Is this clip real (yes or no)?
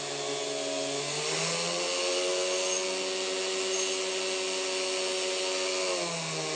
yes